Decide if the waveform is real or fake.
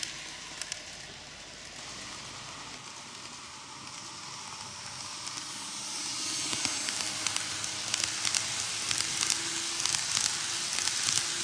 real